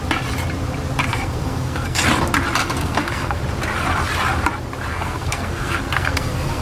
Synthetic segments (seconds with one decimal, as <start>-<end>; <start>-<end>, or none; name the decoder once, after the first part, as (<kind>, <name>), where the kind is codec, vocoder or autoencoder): 1.1-2.0 (codec, SNAC); 2.6-3.4; 4.9-6.6